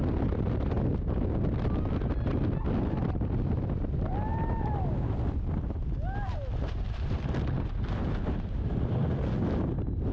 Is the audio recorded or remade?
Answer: recorded